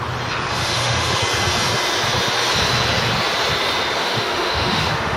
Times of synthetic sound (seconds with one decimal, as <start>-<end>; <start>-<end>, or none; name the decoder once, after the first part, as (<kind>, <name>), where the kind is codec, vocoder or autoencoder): 0.5-1.2 (autoencoder, DAC-VAE); 4.0-5.2